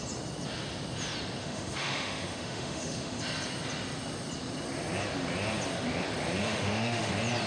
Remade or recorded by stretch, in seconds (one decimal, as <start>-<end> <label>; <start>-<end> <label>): 0.0-1.4 recorded; 1.4-3.2 remade; 3.2-6.4 recorded; 6.4-7.1 remade; 7.1-7.5 recorded